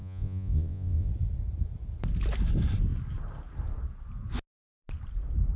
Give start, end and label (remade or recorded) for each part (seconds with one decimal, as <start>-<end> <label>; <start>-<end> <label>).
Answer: 0.0-1.1 remade; 1.1-5.6 recorded